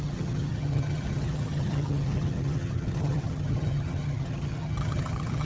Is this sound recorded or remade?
remade